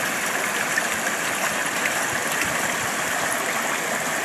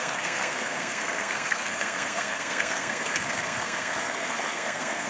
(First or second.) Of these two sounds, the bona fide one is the first